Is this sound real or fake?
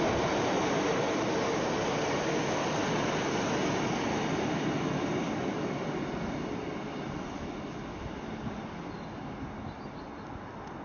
real